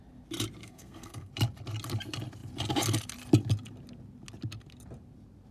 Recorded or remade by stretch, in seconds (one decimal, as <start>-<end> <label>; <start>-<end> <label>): 0.0-0.6 recorded; 0.6-1.3 remade; 1.3-5.5 recorded